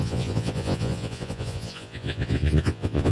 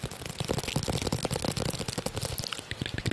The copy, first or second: first